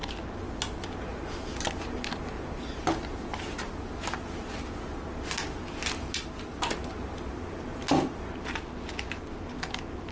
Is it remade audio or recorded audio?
recorded